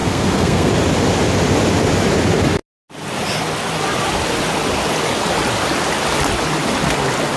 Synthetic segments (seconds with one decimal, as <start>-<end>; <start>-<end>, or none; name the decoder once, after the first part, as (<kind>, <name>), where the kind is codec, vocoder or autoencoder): 0.0-0.7 (codec, SNAC)